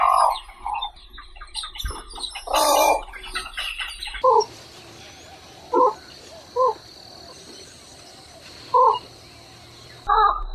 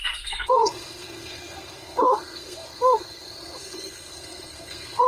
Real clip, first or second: first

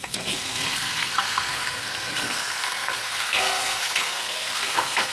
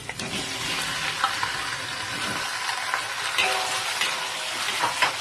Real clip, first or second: second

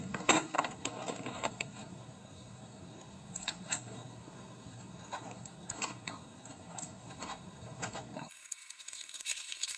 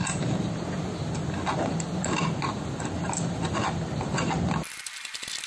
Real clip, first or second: second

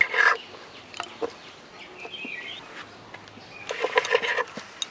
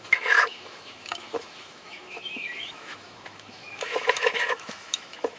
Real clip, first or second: first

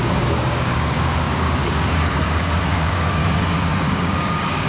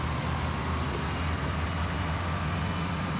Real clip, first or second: second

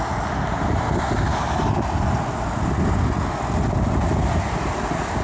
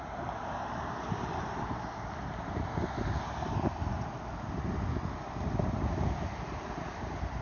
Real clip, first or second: first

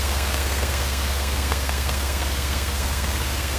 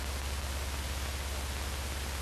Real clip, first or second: second